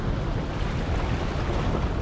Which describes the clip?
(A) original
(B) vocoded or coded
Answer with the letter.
A